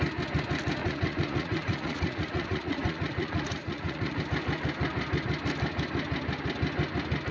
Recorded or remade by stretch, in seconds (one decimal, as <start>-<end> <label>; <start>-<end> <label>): 0.0-0.8 recorded; 0.8-4.2 remade; 4.2-7.3 recorded